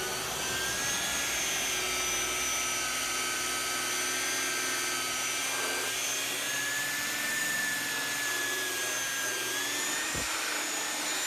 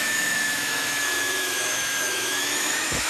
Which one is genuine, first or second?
first